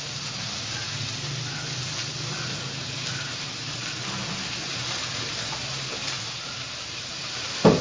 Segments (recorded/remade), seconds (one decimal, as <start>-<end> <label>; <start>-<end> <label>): 0.0-7.8 recorded